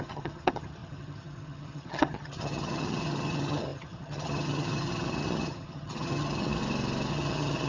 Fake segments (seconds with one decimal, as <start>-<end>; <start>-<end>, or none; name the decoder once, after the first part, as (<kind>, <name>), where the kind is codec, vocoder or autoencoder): 0.0-6.6 (vocoder, HiFi-GAN); 7.1-7.7